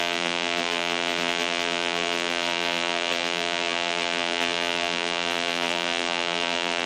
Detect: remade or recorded remade